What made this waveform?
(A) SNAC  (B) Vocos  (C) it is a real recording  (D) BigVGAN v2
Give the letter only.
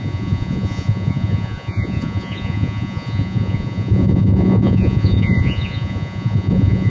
B